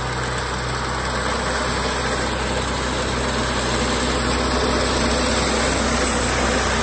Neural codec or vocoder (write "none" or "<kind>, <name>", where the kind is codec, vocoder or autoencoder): none